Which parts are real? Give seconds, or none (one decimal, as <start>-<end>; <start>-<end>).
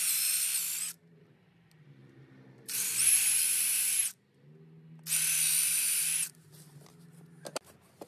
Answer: 0.0-2.0; 3.2-8.1